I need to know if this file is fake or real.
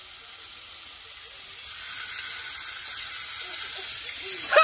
real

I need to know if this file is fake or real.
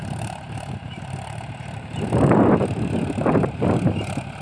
fake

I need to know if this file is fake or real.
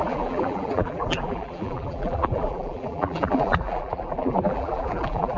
fake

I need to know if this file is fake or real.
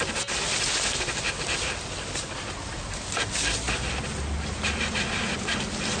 real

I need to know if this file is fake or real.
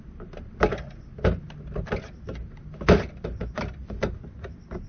real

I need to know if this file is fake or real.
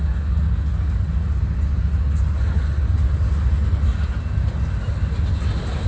real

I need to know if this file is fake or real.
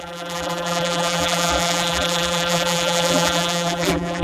fake